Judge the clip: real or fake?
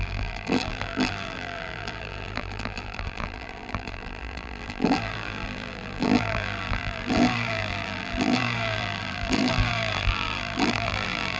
fake